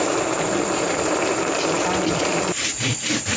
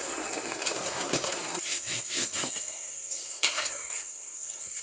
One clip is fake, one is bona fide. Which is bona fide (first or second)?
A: first